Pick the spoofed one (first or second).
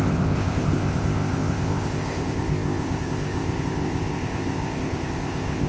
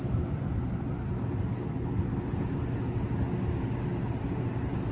first